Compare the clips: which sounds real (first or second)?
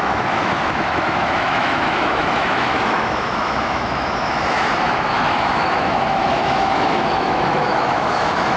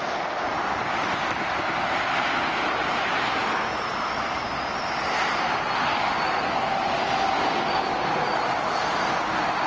second